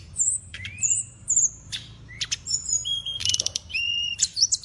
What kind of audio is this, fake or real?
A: fake